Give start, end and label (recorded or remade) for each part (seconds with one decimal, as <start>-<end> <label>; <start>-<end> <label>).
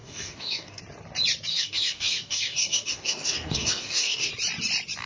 0.0-0.8 remade; 0.8-1.5 recorded; 1.5-4.3 remade; 4.3-5.1 recorded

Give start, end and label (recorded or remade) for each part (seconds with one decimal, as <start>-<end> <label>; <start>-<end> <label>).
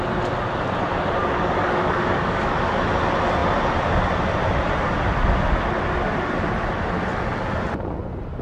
0.0-1.2 recorded; 1.2-2.7 remade; 2.7-8.4 recorded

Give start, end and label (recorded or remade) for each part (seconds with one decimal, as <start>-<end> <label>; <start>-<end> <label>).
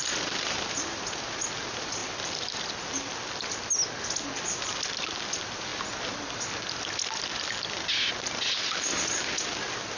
0.0-10.0 recorded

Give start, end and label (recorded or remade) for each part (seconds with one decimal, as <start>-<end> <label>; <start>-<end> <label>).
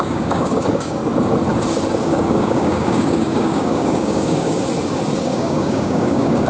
0.0-1.0 remade; 1.0-2.0 recorded; 2.0-4.6 remade; 4.6-5.2 recorded; 5.2-6.5 remade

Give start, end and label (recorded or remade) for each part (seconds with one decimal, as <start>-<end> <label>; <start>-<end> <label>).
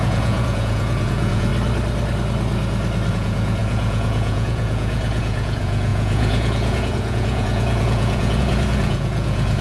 0.0-1.5 remade; 1.5-3.1 recorded; 3.1-9.6 remade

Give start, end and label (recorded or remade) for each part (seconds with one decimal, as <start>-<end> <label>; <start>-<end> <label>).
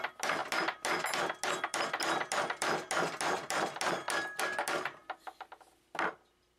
0.0-6.6 recorded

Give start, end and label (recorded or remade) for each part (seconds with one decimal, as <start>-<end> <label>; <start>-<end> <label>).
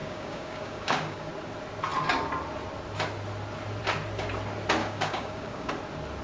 0.0-1.3 remade; 1.3-4.8 recorded; 4.8-5.7 remade; 5.7-6.2 recorded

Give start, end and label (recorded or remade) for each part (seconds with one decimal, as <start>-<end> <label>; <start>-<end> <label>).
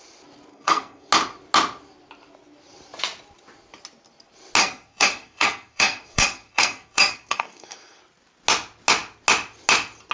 0.0-0.5 recorded; 0.5-1.1 remade; 1.1-4.6 recorded; 4.6-8.0 remade; 8.0-10.1 recorded